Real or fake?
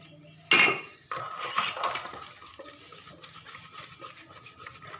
real